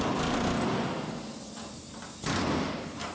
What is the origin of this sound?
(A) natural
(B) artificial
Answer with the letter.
A